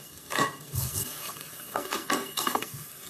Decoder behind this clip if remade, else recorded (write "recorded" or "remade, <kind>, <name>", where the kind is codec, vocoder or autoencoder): remade, codec, SNAC